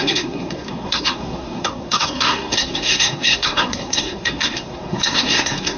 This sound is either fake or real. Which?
fake